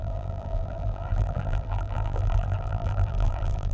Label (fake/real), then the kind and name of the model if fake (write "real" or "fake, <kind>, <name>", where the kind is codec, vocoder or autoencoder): fake, vocoder, BigVGAN v2